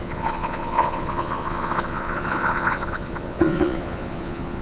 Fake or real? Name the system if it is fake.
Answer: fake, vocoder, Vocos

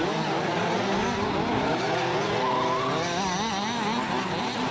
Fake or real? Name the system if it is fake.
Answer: real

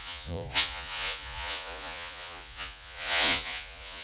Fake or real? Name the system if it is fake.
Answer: fake, vocoder, Vocos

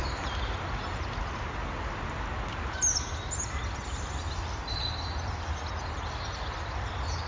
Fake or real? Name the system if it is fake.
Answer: real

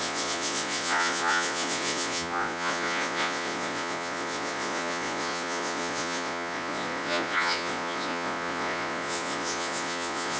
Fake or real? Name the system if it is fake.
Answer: fake, vocoder, Vocos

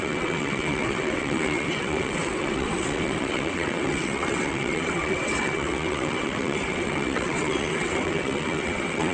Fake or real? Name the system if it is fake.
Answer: fake, vocoder, WaveNeXt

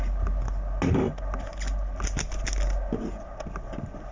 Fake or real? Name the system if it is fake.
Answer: real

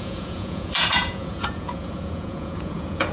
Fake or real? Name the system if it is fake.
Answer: fake, vocoder, Vocos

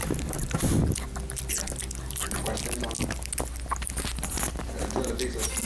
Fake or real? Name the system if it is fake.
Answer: real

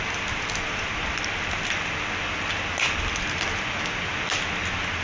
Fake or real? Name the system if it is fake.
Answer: real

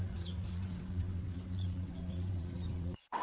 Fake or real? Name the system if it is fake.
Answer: fake, vocoder, WaveNeXt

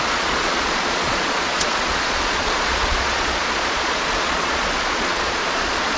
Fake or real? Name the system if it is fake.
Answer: fake, vocoder, Vocos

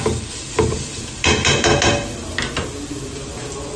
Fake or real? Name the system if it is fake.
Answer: real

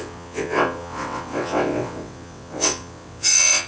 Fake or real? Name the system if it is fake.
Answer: fake, vocoder, WaveNeXt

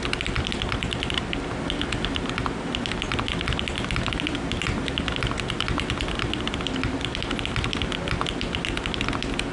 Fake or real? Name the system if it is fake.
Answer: real